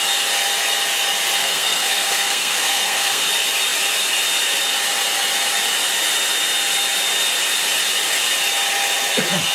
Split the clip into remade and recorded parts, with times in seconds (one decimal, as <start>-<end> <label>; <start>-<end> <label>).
0.0-1.4 recorded; 1.4-3.2 remade; 3.2-9.5 recorded